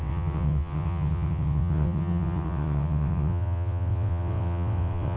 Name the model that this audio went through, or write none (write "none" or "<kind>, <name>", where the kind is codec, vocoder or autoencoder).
vocoder, WaveNeXt